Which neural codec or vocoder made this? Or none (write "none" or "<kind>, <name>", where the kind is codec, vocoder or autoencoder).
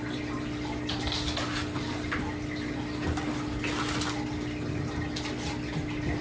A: none